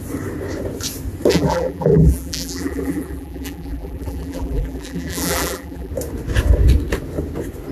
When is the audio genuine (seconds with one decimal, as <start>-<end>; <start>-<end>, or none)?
0.0-1.3; 5.9-7.7